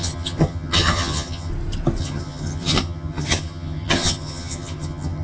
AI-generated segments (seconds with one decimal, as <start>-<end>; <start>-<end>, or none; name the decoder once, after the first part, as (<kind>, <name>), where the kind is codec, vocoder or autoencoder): 0.0-1.5 (vocoder, HiFi-GAN); 2.0-5.2